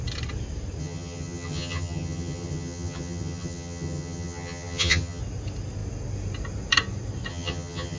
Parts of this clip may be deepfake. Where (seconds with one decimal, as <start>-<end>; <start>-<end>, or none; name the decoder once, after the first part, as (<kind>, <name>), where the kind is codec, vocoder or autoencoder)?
0.8-5.2 (vocoder, HiFi-GAN); 7.3-8.0